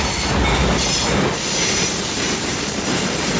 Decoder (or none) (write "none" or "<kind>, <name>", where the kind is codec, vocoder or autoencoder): none